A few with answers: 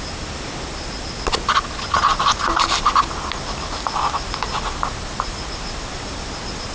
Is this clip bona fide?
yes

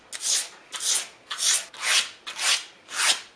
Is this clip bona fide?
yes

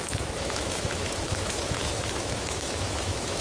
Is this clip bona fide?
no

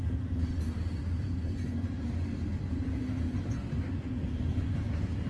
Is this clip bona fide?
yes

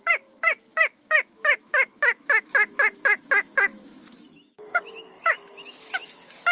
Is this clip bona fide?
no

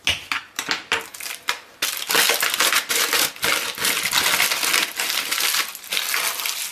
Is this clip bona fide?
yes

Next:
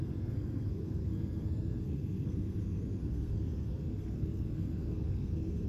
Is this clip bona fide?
no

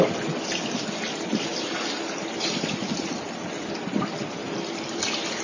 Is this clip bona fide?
yes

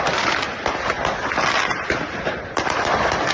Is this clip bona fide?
yes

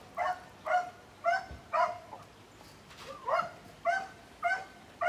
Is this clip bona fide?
yes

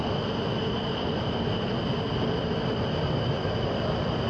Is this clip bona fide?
yes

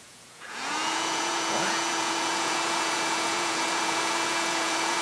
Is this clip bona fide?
no